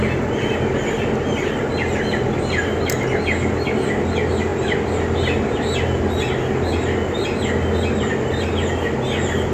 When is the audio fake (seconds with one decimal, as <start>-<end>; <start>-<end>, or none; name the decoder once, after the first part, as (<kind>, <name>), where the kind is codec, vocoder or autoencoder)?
none